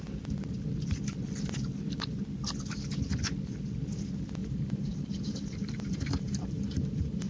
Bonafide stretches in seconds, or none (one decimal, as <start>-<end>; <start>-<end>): 0.0-4.4